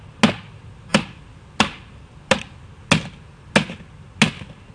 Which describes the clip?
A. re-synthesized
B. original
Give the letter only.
B